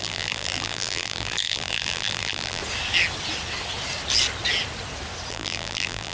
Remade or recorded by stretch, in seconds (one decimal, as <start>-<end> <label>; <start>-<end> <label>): 0.0-2.6 remade; 2.6-5.3 recorded; 5.3-6.1 remade